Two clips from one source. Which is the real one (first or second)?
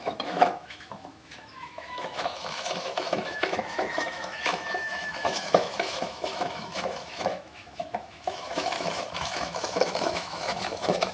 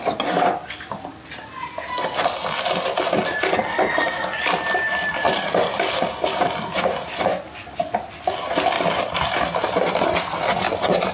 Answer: second